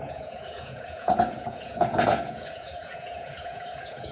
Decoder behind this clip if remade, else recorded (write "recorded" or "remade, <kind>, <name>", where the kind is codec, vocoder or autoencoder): remade, vocoder, Vocos